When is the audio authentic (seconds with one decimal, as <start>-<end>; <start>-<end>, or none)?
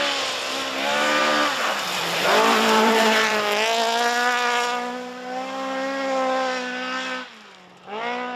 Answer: 0.0-1.2; 3.3-8.4